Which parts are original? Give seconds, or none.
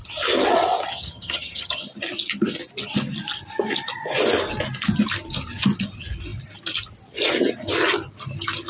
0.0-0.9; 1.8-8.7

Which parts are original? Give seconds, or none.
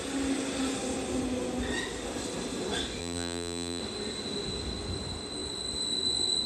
0.0-3.0; 3.8-6.5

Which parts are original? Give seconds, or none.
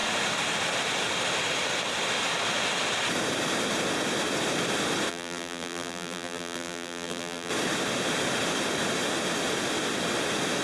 0.0-5.1; 7.5-10.6